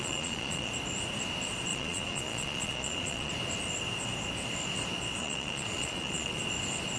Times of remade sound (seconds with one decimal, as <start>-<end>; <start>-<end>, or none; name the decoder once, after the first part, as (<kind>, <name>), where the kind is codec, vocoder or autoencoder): 0.0-0.7 (vocoder, Vocos); 1.7-3.3; 5.2-6.4